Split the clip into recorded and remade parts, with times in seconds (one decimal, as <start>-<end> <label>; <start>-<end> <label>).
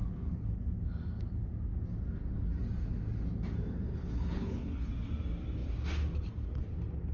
0.0-0.6 remade; 0.6-3.9 recorded; 3.9-4.9 remade; 4.9-7.1 recorded